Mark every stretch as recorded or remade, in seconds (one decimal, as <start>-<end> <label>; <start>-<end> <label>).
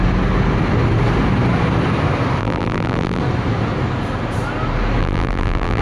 0.0-2.4 recorded; 2.4-3.2 remade; 3.2-5.0 recorded; 5.0-5.8 remade